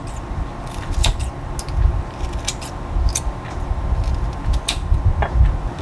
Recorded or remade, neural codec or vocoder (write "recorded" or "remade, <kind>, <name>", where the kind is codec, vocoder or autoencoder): recorded